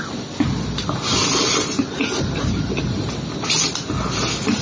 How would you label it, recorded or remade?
recorded